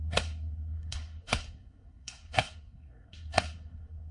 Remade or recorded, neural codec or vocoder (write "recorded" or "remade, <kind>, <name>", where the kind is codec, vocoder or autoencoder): remade, codec, SNAC